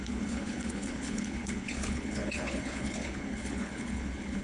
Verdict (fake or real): fake